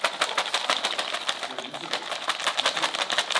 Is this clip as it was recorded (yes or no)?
yes